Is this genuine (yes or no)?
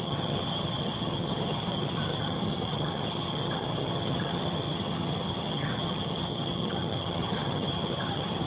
no